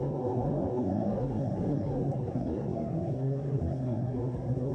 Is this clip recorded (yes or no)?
no